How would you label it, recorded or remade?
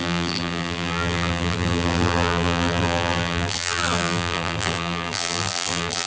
remade